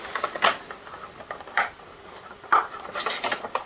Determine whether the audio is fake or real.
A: real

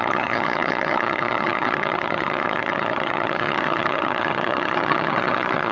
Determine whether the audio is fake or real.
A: fake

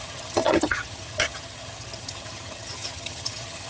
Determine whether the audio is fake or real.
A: fake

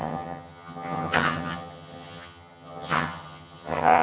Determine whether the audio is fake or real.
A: fake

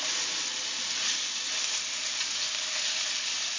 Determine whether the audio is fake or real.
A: real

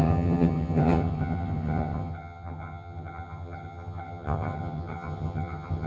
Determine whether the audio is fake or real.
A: fake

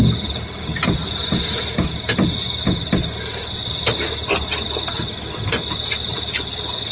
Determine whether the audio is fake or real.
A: real